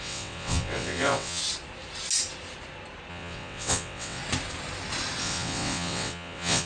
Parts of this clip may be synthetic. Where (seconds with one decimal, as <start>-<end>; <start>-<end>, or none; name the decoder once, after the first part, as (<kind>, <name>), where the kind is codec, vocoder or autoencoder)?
0.0-1.4 (vocoder, WaveNeXt); 3.1-4.2; 5.2-6.7

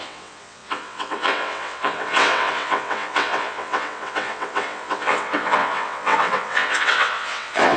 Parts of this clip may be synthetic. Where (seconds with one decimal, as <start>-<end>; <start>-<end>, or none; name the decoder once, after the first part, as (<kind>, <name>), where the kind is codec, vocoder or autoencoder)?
0.0-7.8 (vocoder, WaveNeXt)

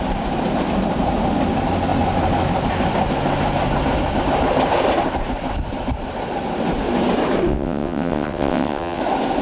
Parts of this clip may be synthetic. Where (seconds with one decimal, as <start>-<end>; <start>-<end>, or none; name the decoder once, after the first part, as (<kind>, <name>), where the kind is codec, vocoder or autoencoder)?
7.5-9.0 (vocoder, WaveNeXt)

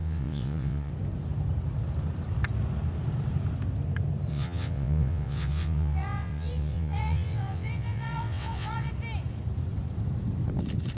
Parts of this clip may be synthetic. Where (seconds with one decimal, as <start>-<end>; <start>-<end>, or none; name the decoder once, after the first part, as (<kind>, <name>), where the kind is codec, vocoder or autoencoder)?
0.0-0.9 (vocoder, WaveNeXt); 4.3-8.9

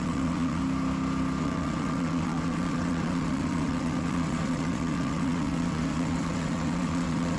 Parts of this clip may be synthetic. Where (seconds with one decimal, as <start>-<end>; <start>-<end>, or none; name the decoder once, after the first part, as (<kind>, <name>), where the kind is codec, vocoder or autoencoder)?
0.0-0.6 (vocoder, WaveNeXt); 1.4-7.4

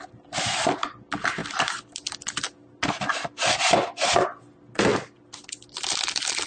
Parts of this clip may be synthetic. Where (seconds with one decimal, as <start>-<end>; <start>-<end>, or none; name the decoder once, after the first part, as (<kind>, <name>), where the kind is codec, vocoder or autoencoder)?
none

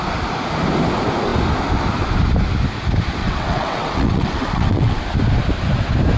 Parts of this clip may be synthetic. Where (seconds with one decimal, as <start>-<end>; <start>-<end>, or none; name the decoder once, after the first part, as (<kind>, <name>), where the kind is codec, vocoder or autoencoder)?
3.2-5.0 (vocoder, WaveNeXt)

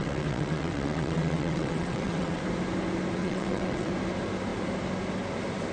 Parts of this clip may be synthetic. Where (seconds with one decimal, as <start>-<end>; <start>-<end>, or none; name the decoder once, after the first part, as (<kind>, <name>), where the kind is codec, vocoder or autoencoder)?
0.0-2.4 (vocoder, WaveNeXt); 3.2-3.9